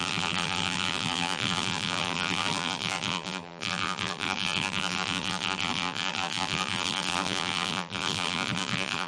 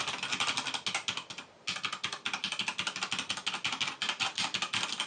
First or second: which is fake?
first